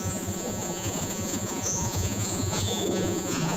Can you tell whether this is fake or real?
fake